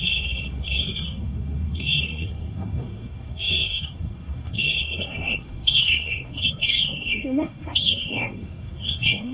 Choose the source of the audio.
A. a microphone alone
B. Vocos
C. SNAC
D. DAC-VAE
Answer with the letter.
C